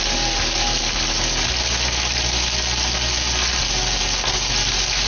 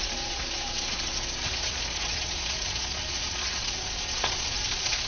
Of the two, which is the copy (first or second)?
second